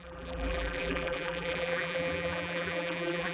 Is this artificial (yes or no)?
yes